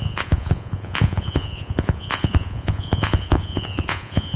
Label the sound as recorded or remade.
remade